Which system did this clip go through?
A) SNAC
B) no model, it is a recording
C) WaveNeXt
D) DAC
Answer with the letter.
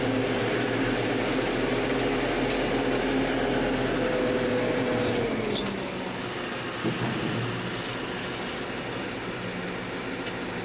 B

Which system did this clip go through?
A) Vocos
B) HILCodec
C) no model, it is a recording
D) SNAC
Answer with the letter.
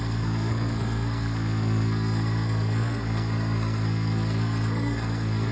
D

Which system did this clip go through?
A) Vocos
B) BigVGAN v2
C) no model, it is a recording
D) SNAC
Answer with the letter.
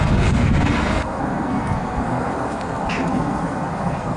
D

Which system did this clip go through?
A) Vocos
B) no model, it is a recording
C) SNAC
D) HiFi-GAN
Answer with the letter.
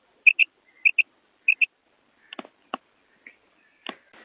B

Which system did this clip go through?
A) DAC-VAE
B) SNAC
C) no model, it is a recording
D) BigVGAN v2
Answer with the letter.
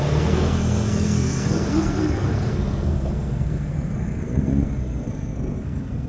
B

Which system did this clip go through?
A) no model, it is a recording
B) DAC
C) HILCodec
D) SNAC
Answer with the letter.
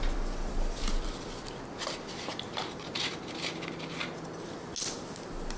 A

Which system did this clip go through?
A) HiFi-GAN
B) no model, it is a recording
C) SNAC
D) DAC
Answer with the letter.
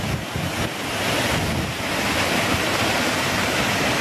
B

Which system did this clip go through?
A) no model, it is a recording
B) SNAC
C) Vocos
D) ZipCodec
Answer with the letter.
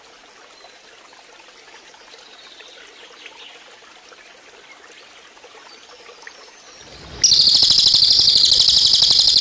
A